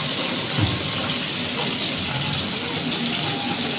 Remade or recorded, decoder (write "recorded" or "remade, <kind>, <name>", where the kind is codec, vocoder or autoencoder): recorded